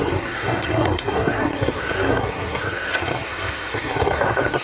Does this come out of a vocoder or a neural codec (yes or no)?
yes